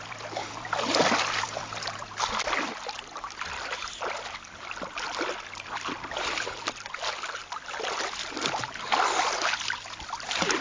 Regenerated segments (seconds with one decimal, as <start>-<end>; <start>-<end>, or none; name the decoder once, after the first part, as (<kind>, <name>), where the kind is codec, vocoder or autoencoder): none

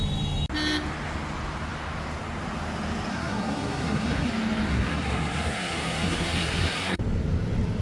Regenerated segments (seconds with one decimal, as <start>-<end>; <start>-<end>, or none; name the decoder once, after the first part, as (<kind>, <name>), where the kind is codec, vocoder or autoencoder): 3.1-4.3 (codec, SNAC); 4.7-7.0